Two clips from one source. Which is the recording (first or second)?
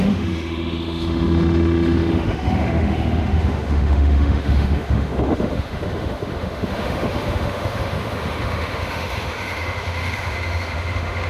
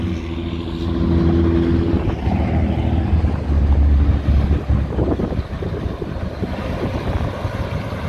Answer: second